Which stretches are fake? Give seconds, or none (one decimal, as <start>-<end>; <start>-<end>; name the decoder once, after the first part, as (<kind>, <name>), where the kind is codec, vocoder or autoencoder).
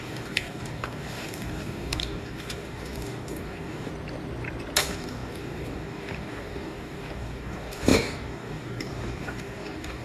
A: 0.0-3.9 (codec, DAC); 4.8-10.0